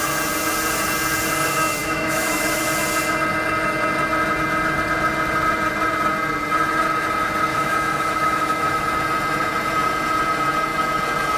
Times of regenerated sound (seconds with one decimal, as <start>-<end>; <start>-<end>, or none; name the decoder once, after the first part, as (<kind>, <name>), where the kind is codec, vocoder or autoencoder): 1.8-2.6 (autoencoder, DAC-VAE); 7.5-8.9